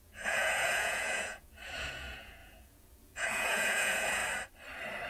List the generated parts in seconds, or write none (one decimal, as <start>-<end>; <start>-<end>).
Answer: 0.0-4.2